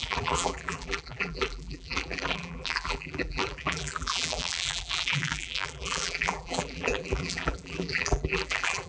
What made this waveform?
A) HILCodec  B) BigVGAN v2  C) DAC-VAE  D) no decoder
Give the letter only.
B